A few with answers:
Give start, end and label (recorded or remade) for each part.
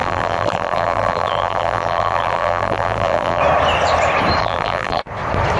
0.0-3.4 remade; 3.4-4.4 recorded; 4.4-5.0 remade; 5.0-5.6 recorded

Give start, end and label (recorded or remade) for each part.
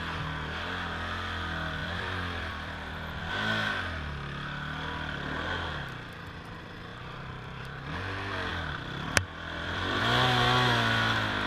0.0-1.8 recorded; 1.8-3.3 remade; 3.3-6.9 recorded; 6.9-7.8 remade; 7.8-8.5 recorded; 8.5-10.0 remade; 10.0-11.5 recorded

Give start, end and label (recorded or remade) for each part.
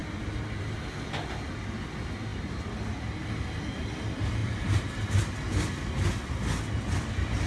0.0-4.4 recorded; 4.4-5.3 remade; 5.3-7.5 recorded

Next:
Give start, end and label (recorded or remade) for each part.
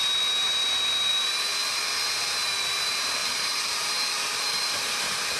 0.0-3.2 recorded; 3.2-5.4 remade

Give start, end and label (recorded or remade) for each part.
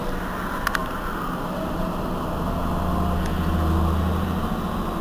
0.0-5.0 recorded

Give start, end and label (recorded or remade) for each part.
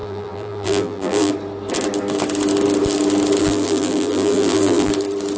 0.0-1.3 remade; 1.3-3.4 recorded; 3.4-4.9 remade; 4.9-5.4 recorded